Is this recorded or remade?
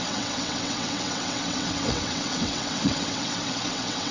remade